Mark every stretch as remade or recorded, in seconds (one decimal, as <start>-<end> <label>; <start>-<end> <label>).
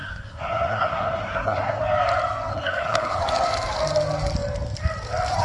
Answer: 0.0-1.8 remade; 1.8-2.5 recorded; 2.5-3.2 remade; 3.2-5.4 recorded